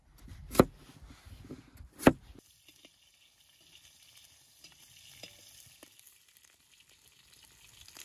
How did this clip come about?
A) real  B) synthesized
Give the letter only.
A